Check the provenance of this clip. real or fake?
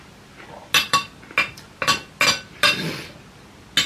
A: real